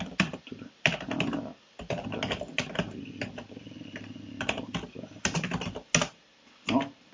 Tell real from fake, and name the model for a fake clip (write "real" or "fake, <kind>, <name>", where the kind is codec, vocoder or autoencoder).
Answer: real